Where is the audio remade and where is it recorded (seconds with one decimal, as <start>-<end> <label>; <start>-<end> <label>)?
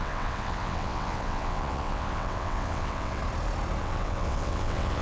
0.0-3.2 remade; 3.2-3.8 recorded; 3.8-5.0 remade